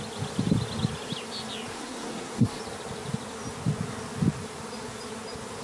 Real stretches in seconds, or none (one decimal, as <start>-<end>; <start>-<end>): 0.0-1.7; 2.6-5.6